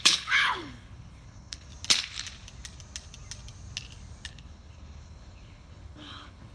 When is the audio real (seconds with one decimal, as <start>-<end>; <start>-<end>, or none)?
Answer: 1.7-4.3